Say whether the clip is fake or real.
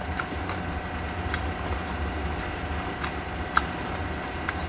real